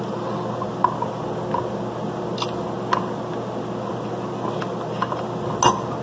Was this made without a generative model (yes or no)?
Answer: yes